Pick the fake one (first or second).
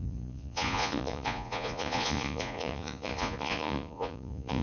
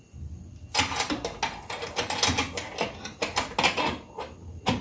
first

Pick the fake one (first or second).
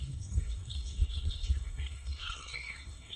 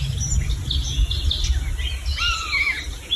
first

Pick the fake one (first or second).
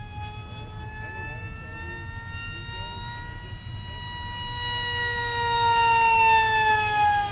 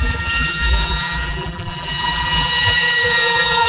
second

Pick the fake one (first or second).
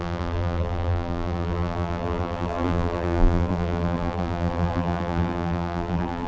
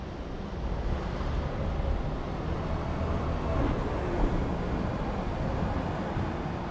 first